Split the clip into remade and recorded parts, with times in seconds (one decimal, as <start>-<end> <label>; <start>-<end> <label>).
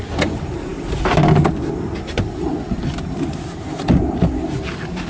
0.0-5.1 recorded